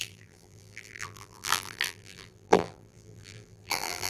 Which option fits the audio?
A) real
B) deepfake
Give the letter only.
B